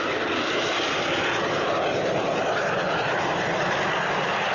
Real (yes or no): no